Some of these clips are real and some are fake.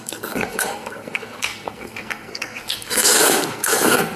fake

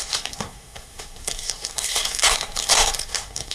fake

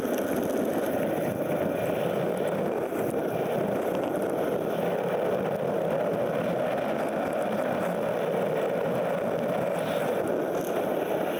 real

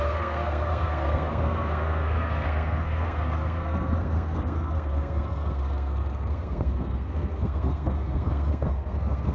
fake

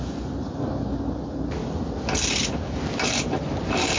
real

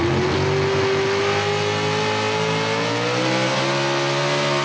real